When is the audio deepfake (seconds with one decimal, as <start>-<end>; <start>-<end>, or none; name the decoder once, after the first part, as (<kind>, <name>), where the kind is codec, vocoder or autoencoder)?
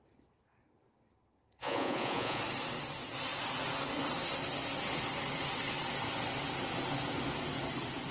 1.6-2.4 (vocoder, Vocos)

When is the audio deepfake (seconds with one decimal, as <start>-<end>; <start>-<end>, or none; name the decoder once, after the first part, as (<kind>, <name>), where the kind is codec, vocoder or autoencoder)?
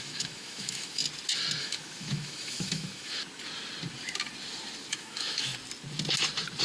0.0-1.0 (autoencoder, DAC-VAE); 1.6-3.2; 4.9-5.5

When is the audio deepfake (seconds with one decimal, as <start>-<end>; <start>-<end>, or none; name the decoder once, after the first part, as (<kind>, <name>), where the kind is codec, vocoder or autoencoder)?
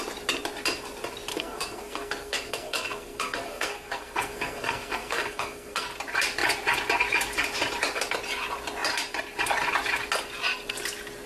1.3-5.9 (codec, SNAC)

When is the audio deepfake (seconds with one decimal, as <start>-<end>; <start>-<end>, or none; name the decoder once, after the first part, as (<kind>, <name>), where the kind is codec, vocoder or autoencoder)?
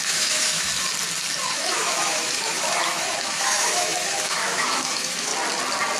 0.0-0.7 (autoencoder, DAC-VAE); 1.5-5.3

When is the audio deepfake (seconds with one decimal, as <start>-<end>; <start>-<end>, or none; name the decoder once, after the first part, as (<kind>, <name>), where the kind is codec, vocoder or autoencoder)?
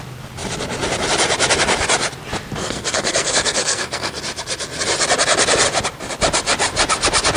2.6-4.2 (codec, SNAC)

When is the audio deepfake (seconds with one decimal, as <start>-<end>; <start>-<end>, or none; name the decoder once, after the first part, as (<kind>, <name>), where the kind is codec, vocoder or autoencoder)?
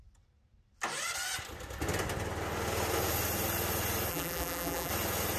4.1-4.9 (vocoder, BigVGAN v2)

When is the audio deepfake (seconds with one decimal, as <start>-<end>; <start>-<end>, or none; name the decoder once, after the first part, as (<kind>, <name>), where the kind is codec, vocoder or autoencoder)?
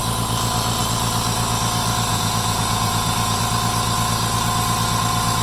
2.1-3.4 (vocoder, Vocos)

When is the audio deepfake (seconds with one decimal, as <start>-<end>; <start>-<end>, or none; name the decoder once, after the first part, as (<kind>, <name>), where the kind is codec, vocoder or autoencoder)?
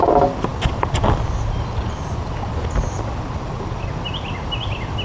none